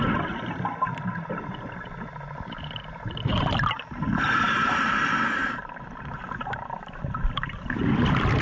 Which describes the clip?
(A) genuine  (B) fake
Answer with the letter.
B